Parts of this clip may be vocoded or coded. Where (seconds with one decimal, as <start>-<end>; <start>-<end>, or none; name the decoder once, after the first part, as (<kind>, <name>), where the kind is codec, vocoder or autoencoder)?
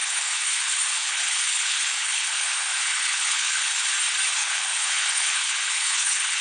0.0-3.8 (codec, HILCodec); 4.4-6.4